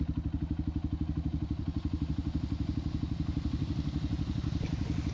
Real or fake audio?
real